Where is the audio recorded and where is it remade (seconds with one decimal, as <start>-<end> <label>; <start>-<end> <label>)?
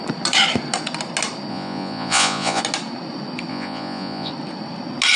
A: 0.0-1.5 recorded; 1.5-2.6 remade; 2.6-3.5 recorded; 3.5-4.3 remade; 4.3-5.2 recorded